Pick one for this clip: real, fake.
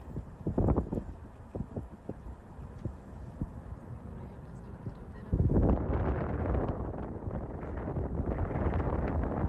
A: real